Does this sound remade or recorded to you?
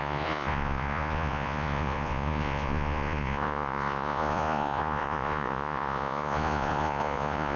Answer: remade